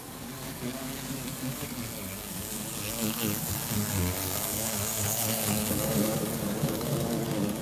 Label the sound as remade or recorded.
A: remade